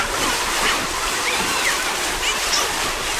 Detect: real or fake fake